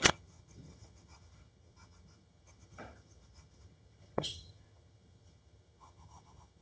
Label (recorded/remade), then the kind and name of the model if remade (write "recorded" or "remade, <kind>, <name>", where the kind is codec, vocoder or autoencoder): remade, vocoder, HiFi-GAN